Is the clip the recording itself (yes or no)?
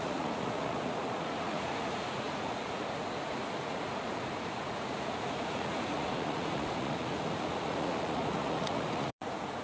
no